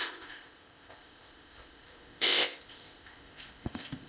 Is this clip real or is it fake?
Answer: fake